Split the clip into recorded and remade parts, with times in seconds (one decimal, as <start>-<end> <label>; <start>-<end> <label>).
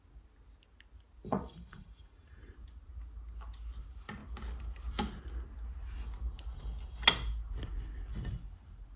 0.0-1.3 recorded; 1.3-2.5 remade; 2.5-9.0 recorded